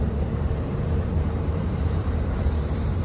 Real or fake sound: fake